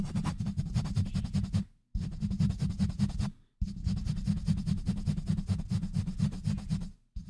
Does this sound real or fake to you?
real